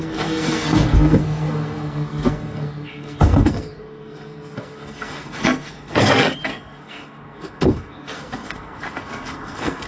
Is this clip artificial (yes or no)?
yes